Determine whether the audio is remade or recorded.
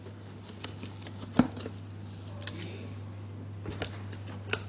recorded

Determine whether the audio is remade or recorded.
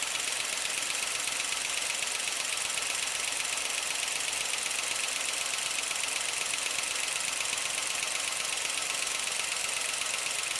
recorded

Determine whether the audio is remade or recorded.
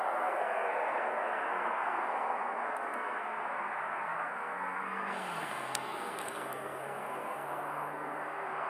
remade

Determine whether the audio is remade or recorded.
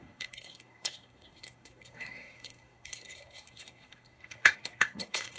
remade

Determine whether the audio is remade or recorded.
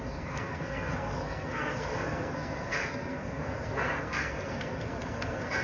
remade